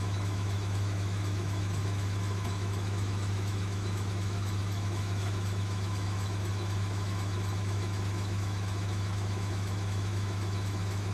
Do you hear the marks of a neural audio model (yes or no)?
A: yes